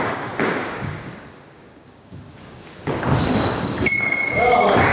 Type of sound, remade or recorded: remade